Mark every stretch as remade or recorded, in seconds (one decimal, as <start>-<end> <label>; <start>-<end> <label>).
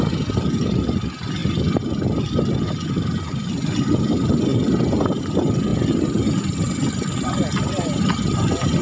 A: 0.0-5.7 recorded; 5.7-6.9 remade; 6.9-8.8 recorded